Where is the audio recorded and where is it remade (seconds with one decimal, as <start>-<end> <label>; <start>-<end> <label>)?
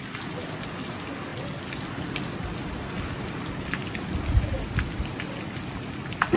0.0-6.4 recorded